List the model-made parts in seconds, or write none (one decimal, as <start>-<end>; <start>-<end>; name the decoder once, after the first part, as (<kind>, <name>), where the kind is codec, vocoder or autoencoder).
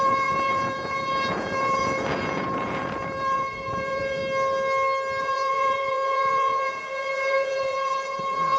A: 0.0-4.2 (vocoder, Vocos); 5.2-8.6